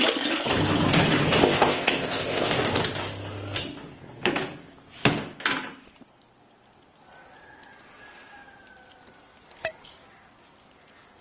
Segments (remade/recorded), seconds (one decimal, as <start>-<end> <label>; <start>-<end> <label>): 0.0-1.4 recorded; 1.4-2.5 remade; 2.5-11.2 recorded